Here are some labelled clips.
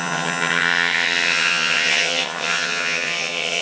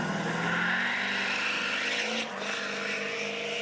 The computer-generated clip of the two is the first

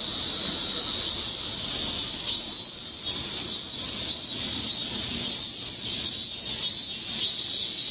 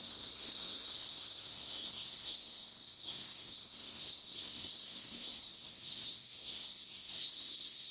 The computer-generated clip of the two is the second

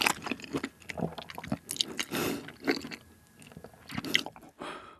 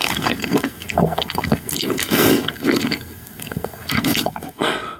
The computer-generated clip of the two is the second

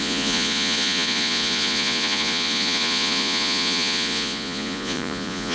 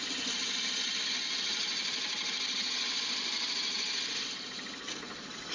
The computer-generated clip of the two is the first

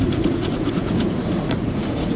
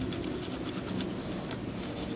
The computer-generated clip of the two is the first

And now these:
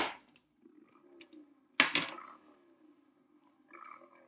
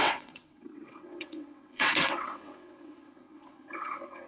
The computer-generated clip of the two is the second